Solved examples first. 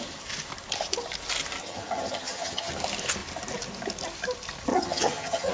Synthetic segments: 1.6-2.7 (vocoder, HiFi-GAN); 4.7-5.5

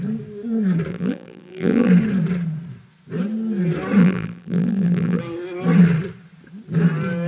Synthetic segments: 0.9-1.9 (vocoder, BigVGAN v2); 4.0-5.2

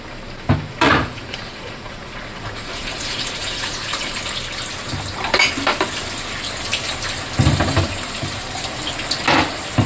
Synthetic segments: 0.7-4.2 (vocoder, Vocos)

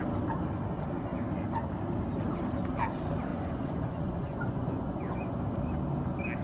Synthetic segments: 3.3-5.4 (vocoder, Vocos)

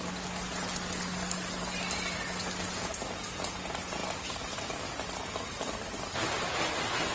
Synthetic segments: none

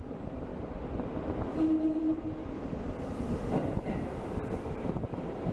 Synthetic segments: none